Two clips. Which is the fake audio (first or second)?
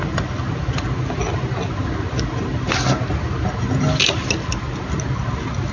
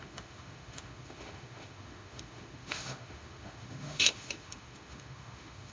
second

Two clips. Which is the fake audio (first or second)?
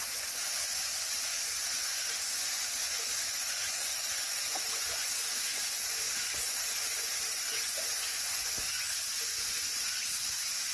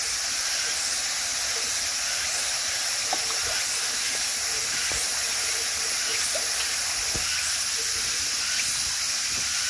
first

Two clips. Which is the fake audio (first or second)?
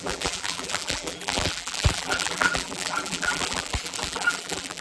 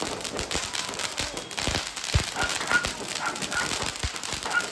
first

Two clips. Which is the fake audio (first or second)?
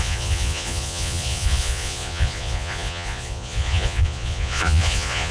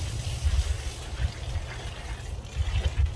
first